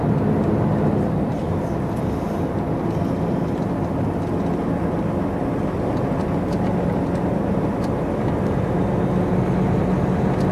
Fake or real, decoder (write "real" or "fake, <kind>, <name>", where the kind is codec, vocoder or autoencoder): real